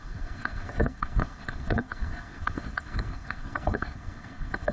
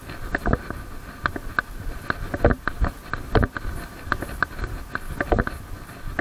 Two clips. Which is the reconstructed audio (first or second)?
first